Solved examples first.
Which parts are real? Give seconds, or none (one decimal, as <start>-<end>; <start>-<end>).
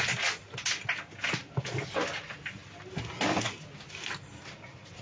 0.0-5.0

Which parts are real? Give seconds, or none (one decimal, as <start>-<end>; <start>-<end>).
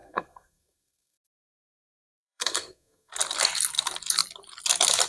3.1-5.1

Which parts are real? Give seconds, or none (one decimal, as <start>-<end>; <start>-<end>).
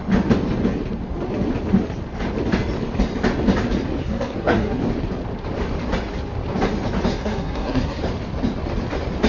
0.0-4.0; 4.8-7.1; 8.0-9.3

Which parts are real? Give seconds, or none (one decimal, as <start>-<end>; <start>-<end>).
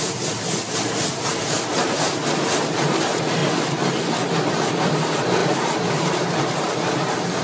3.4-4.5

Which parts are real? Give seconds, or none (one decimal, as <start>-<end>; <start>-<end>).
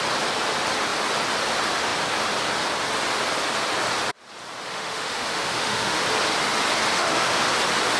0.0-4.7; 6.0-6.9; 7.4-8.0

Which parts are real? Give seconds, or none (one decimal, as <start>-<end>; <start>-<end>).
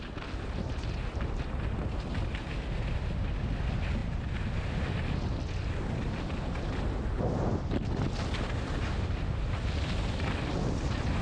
0.0-11.2